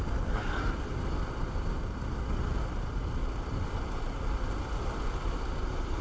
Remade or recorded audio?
recorded